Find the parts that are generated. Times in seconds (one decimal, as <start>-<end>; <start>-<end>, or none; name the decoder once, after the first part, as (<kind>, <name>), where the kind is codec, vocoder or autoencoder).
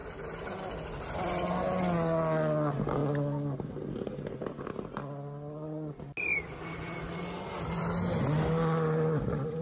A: none